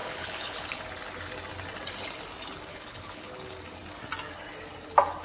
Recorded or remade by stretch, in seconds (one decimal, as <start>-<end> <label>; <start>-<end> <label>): 0.0-0.8 remade; 0.8-2.7 recorded; 2.7-3.3 remade; 3.3-5.2 recorded